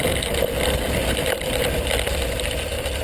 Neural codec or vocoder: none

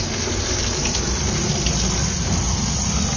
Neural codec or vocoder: none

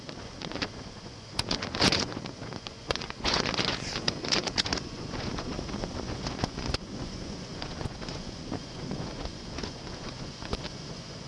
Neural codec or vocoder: vocoder, Vocos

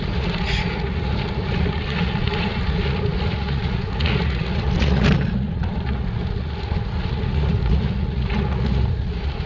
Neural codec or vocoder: vocoder, Vocos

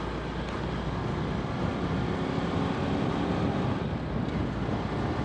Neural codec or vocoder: none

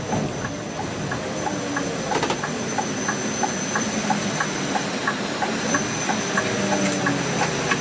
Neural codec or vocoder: none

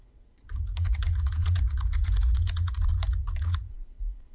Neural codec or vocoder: vocoder, Vocos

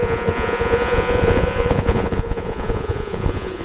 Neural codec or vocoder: vocoder, Vocos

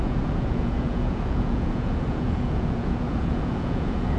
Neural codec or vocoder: vocoder, Vocos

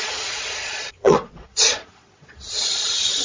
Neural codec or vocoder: vocoder, Vocos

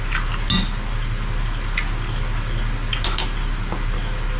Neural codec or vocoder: none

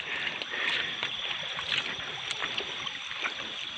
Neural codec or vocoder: none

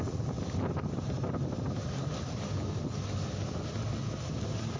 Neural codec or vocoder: none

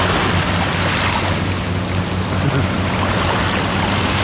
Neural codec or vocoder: none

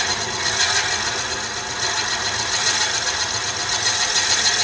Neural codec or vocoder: none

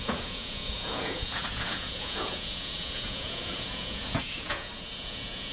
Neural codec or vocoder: vocoder, Vocos